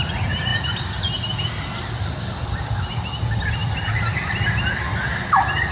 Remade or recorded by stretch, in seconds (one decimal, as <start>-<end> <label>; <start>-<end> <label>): 0.0-5.7 recorded